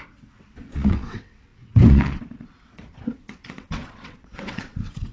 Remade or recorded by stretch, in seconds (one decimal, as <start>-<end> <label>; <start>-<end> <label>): 0.0-5.1 remade